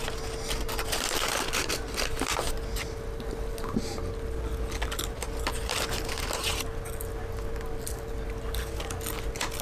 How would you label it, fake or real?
real